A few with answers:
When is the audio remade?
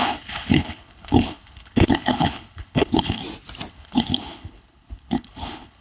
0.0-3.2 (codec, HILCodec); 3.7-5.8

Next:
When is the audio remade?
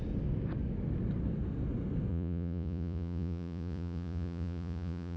2.1-5.2 (vocoder, Vocos)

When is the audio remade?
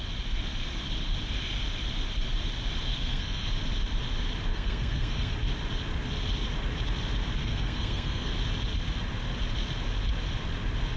2.9-3.5 (codec, SNAC); 4.5-5.3; 7.4-8.3